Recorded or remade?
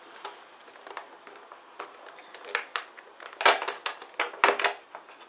recorded